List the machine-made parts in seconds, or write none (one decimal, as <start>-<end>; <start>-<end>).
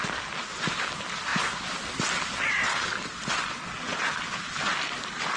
none